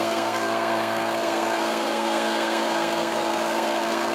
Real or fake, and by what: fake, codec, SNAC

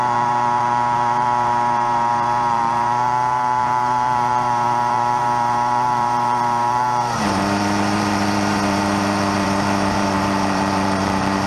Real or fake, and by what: fake, vocoder, BigVGAN v2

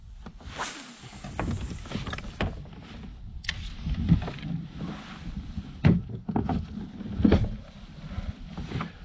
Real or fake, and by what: real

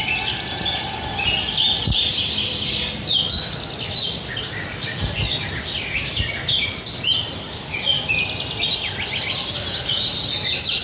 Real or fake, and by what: real